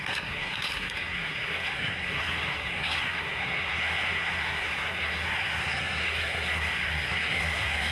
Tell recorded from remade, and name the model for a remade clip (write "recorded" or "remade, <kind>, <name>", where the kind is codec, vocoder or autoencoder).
remade, codec, SNAC